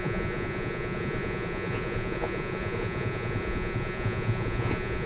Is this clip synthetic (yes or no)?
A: yes